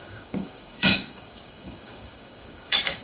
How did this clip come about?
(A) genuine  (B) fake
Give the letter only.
B